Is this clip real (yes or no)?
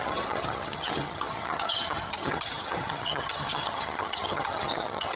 no